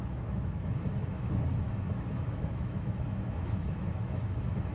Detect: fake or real fake